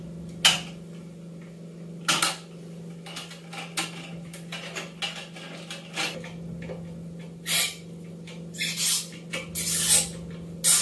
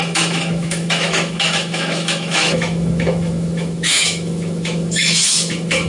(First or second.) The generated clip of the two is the second